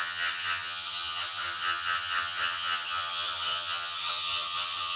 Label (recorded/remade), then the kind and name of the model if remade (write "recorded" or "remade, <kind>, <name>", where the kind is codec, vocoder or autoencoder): remade, vocoder, HiFi-GAN